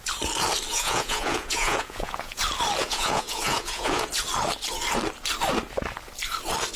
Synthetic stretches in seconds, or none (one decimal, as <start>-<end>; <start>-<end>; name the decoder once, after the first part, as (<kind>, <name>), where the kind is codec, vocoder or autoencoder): 0.7-2.4 (vocoder, Vocos); 2.8-4.1